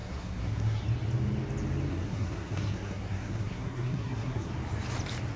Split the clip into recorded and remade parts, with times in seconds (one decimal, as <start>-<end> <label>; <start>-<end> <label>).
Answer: 0.0-0.8 remade; 0.8-1.9 recorded; 1.9-4.5 remade; 4.5-5.4 recorded